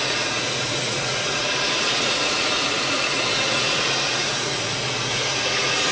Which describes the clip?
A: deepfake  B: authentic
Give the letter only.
A